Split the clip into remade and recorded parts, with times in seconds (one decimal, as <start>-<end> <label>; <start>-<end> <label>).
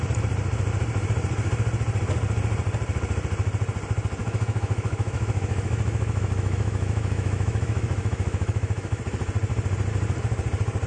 0.0-4.2 recorded; 4.2-9.0 remade; 9.0-10.9 recorded